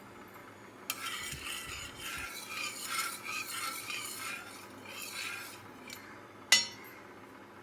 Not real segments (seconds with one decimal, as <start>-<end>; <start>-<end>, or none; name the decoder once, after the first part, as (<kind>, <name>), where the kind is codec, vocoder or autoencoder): none